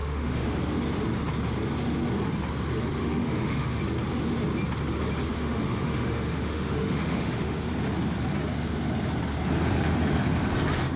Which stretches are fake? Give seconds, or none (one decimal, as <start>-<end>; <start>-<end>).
0.0-0.6; 3.0-3.8; 5.3-7.7